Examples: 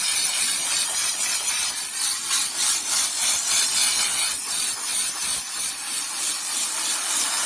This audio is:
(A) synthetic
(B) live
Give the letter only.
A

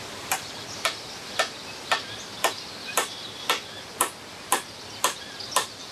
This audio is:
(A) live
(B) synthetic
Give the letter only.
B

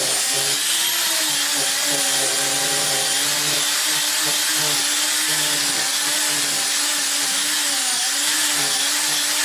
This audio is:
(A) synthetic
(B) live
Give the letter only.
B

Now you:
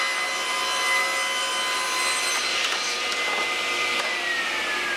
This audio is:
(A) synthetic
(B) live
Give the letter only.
B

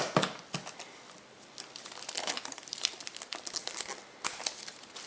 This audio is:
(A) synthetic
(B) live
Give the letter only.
B